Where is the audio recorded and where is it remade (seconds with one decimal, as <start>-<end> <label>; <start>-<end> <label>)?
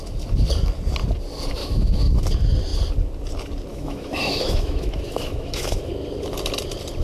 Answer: 0.0-1.6 recorded; 1.6-2.1 remade; 2.1-3.7 recorded; 3.7-5.9 remade; 5.9-7.0 recorded